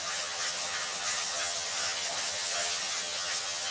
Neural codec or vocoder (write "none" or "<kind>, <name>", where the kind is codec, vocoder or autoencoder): vocoder, HiFi-GAN